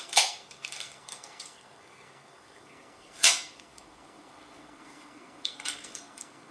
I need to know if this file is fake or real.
fake